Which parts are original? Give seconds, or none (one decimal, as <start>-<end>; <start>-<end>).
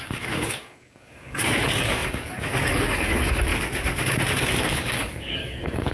3.5-4.6